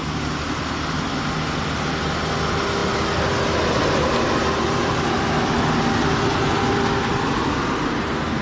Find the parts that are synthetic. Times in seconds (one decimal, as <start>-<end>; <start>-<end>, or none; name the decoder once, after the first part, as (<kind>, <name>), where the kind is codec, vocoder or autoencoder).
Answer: none